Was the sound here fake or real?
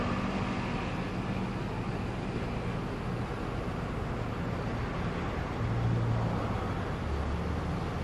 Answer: real